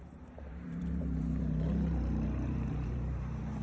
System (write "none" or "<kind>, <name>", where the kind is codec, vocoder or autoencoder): vocoder, BigVGAN v2